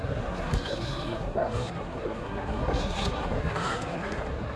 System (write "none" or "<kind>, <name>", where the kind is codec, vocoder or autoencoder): codec, SNAC